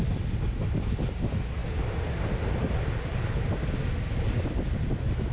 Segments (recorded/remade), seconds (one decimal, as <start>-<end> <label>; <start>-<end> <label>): 0.0-5.3 recorded